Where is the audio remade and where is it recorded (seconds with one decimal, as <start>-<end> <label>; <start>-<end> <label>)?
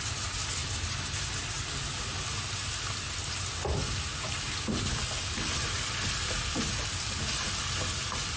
0.0-8.4 recorded